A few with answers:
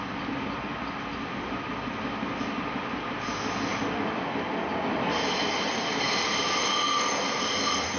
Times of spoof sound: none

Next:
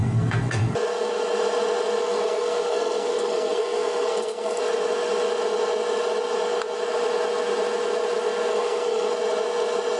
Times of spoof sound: 0.0-0.7 (codec, SNAC); 2.0-4.6; 8.5-9.1

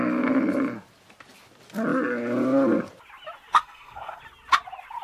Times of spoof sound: 3.5-4.2 (codec, SNAC)

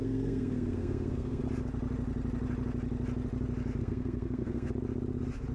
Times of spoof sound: 0.0-1.4 (codec, SNAC); 3.8-4.7